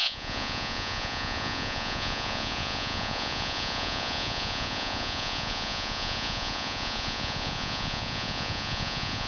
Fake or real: fake